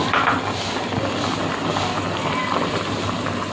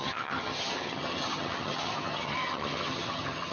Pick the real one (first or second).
first